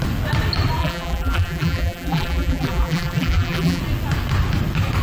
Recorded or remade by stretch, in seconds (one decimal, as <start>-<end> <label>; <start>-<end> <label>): 0.0-0.8 recorded; 0.8-3.8 remade; 3.8-5.0 recorded